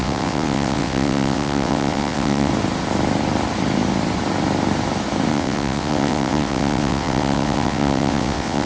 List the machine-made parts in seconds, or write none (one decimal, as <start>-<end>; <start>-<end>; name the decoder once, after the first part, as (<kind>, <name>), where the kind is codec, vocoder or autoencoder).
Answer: 0.0-2.5 (vocoder, WaveNeXt); 5.3-8.7